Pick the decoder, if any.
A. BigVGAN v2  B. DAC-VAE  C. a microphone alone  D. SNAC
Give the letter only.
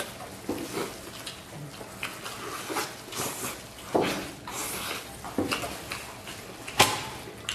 C